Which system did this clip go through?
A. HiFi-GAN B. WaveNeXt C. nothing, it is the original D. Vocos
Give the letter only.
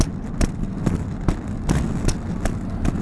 C